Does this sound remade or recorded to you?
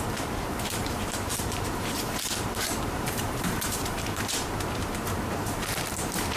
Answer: remade